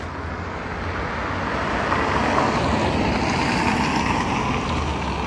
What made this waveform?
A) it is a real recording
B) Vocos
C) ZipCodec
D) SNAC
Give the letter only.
A